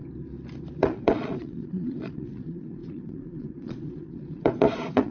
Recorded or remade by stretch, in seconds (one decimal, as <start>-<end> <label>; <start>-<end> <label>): 0.0-0.8 recorded; 0.8-5.1 remade